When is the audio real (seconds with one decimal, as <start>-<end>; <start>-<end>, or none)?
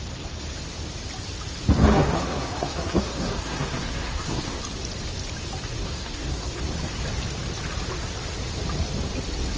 0.0-1.8; 4.6-5.7; 6.6-9.6